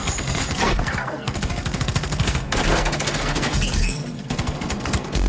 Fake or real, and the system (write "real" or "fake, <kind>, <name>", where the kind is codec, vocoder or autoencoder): fake, codec, SNAC